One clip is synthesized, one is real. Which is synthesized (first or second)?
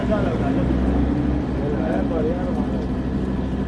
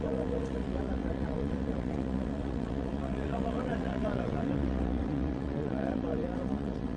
second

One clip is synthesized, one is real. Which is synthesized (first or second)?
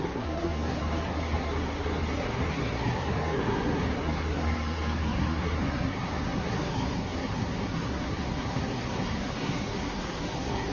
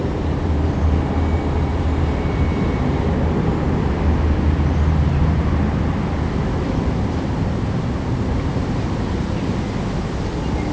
first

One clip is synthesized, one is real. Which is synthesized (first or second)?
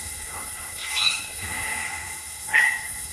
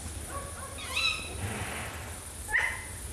first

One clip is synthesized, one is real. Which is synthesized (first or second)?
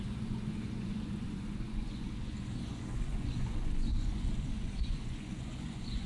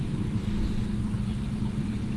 first